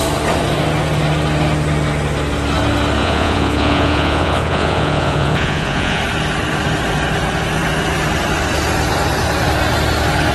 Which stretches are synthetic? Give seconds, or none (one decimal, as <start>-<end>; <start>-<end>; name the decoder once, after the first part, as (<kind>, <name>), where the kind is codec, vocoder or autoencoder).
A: 3.0-6.0 (vocoder, Vocos)